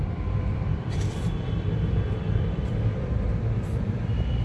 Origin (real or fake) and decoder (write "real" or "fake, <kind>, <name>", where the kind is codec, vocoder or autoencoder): fake, vocoder, BigVGAN v2